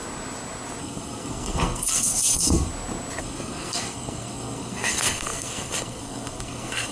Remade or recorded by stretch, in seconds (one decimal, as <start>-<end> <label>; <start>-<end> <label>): 0.0-0.8 recorded; 0.8-2.7 remade; 2.7-3.2 recorded; 3.2-6.9 remade